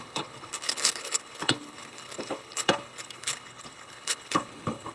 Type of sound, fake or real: fake